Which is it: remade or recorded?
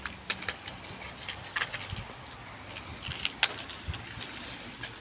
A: recorded